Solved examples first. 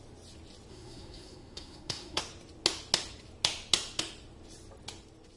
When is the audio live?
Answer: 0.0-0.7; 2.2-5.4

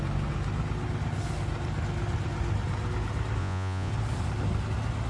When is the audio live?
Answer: 0.0-3.4; 3.9-5.1

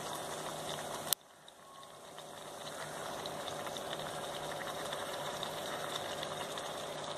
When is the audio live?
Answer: 0.0-4.6; 5.9-7.2

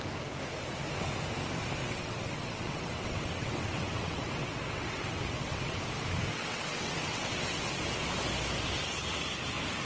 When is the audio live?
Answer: 0.0-1.8; 5.8-6.3; 7.6-9.9

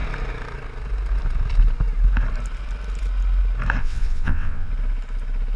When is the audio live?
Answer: 0.0-3.8; 4.7-5.6